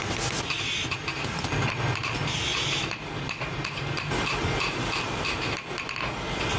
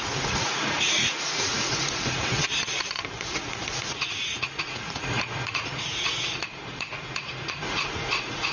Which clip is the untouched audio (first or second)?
first